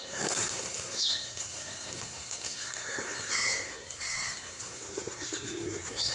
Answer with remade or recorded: remade